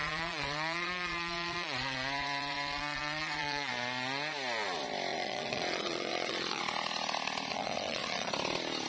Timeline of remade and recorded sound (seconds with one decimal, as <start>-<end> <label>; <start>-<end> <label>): 0.0-3.7 remade; 3.7-5.1 recorded; 5.1-6.6 remade; 6.6-7.5 recorded; 7.5-8.3 remade; 8.3-8.9 recorded